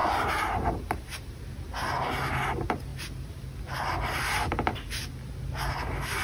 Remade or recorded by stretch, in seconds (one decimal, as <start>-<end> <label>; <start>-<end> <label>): 0.0-1.4 remade; 1.4-2.9 recorded; 2.9-3.5 remade; 3.5-4.4 recorded; 4.4-5.1 remade; 5.1-6.2 recorded